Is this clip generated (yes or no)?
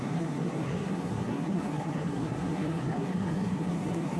yes